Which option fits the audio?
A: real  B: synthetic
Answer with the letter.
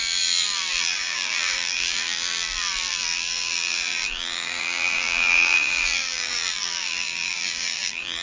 B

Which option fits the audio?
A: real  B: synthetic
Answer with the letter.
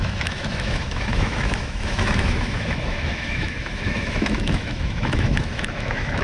B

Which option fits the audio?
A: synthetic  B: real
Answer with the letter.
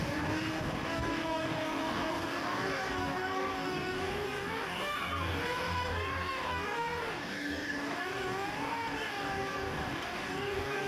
A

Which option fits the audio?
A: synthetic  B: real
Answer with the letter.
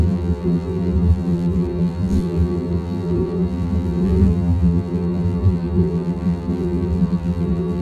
A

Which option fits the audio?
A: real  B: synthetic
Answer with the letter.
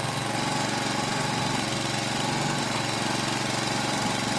A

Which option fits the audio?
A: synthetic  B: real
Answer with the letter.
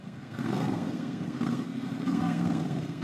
A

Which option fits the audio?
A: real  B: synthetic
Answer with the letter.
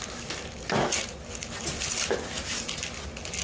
A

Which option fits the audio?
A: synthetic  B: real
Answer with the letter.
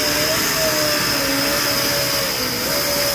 B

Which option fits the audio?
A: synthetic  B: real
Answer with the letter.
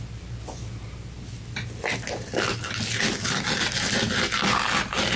B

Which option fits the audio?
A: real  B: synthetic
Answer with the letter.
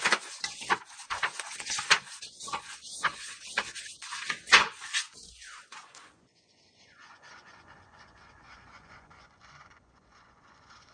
B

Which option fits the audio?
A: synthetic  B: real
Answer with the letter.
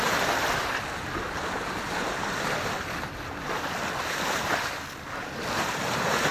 B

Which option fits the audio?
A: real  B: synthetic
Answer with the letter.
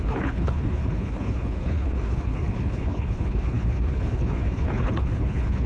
B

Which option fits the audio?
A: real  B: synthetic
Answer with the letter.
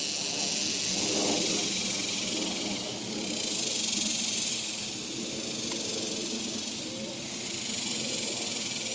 A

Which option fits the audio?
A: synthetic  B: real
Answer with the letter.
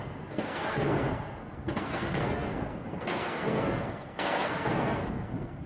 A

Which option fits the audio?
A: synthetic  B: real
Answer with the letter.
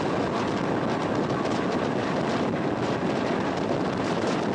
B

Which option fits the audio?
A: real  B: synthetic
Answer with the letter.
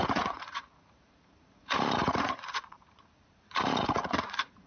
B